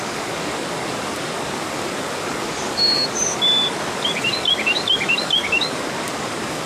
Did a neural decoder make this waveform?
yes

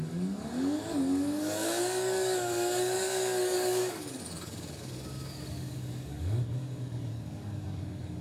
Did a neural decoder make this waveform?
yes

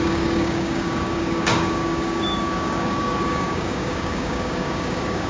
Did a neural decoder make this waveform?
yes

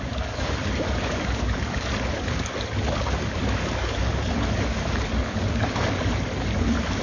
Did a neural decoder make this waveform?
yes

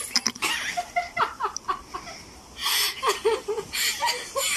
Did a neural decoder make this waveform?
no